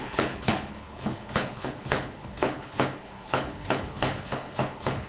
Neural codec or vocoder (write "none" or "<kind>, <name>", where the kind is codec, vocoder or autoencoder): codec, HILCodec